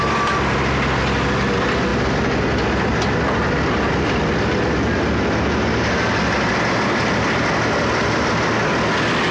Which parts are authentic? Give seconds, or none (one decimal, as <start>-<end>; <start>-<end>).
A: 0.0-9.3